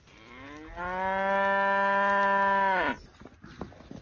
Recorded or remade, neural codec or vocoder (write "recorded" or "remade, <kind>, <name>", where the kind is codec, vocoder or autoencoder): recorded